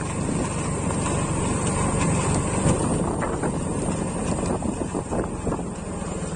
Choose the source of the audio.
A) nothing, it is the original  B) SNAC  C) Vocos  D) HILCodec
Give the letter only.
A